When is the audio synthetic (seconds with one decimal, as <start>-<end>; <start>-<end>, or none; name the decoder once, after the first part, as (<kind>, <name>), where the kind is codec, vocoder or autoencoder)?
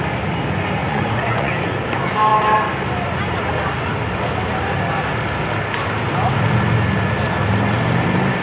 0.8-1.7 (vocoder, Vocos)